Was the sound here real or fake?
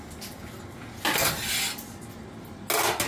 real